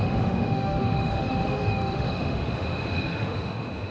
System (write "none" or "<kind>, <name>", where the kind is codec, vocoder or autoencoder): autoencoder, DAC-VAE